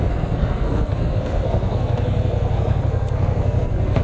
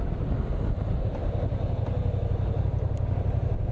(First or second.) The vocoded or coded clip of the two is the first